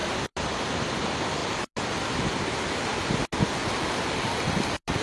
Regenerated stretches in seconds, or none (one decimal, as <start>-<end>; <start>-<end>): none